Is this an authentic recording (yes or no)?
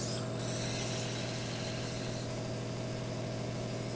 yes